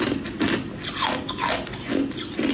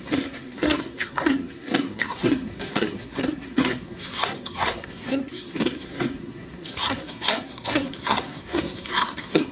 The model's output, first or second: second